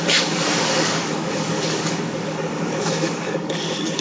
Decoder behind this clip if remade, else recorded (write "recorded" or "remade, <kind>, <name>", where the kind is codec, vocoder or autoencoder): remade, codec, DAC